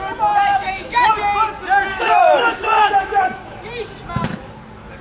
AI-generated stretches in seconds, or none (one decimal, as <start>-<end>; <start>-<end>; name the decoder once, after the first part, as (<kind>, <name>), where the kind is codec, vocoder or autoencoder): 0.5-1.1 (autoencoder, DAC-VAE); 1.9-3.6